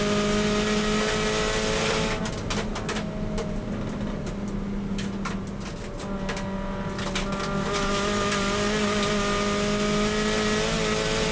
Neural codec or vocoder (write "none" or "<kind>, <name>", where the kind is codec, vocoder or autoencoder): none